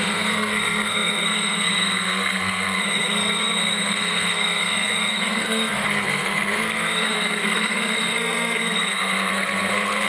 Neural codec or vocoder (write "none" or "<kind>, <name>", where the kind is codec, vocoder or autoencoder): codec, SNAC